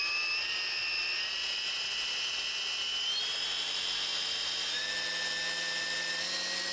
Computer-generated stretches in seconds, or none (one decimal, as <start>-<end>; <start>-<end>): 1.4-2.3

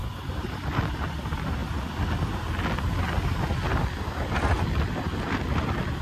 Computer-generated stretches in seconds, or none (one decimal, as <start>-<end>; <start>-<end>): none

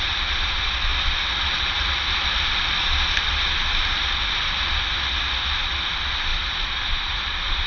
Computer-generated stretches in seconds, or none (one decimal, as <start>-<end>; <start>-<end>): 6.3-7.7

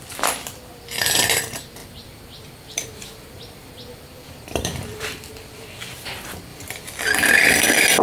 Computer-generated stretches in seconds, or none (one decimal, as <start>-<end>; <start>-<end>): 1.8-5.8; 6.5-7.4